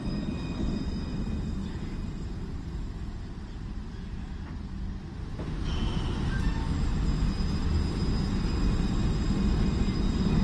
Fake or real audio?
real